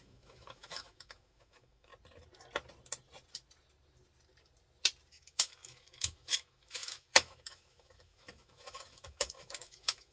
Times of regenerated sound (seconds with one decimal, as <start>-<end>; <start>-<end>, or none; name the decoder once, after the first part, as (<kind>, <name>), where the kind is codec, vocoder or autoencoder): 0.0-1.9 (autoencoder, DAC-VAE); 5.1-10.1